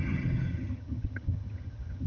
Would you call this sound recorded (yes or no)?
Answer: no